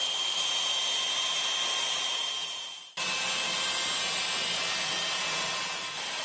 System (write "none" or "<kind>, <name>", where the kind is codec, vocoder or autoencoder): none